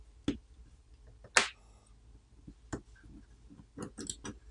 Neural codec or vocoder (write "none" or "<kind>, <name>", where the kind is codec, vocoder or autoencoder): none